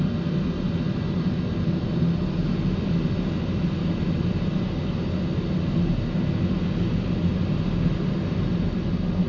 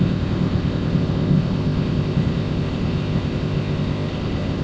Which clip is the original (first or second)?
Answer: first